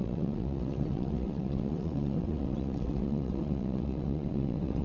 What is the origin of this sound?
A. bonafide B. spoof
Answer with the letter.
B